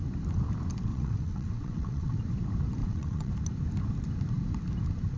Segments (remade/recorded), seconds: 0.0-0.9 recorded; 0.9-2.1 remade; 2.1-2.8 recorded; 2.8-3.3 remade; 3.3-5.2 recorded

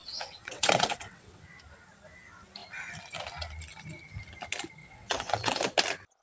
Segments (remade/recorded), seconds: 0.0-1.4 remade; 1.4-4.8 recorded; 4.8-5.6 remade; 5.6-6.2 recorded

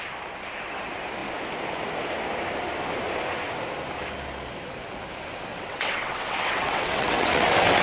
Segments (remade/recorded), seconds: 0.0-5.5 recorded; 5.5-7.8 remade

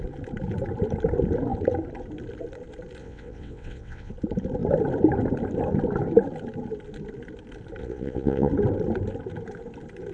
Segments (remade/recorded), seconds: 0.0-3.0 recorded; 3.0-4.1 remade; 4.1-7.8 recorded; 7.8-8.5 remade; 8.5-10.1 recorded

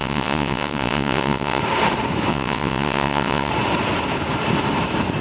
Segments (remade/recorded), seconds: 0.0-1.6 remade; 1.6-2.3 recorded; 2.3-3.5 remade; 3.5-5.2 recorded

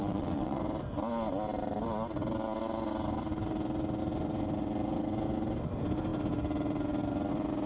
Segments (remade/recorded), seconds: 0.0-0.6 remade; 0.6-7.7 recorded

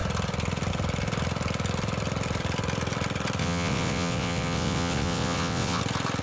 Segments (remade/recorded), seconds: 0.0-3.4 recorded; 3.4-5.8 remade; 5.8-6.2 recorded